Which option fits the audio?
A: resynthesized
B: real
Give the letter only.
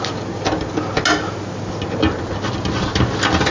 B